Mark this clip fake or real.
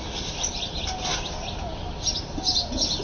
real